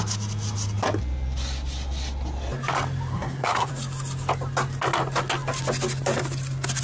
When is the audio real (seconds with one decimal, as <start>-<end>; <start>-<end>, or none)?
0.0-3.1; 3.7-6.8